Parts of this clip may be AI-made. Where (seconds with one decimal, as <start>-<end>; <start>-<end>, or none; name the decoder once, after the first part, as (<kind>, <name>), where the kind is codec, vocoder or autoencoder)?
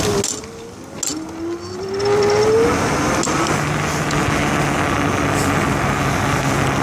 none